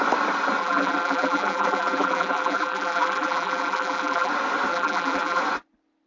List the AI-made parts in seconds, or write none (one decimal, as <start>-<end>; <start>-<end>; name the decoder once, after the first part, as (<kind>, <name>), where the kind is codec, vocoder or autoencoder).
0.6-4.3 (vocoder, BigVGAN v2); 4.7-5.4